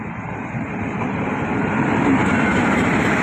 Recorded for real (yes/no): no